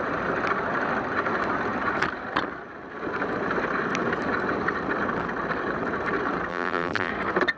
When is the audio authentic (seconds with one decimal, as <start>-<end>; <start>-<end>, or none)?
0.0-6.5; 7.1-7.6